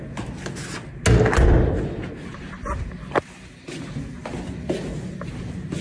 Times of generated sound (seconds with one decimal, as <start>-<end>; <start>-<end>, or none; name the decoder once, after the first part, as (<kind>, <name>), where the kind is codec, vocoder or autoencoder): 2.3-3.8 (vocoder, BigVGAN v2)